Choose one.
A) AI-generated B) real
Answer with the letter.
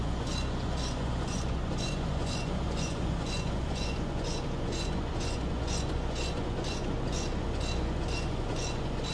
A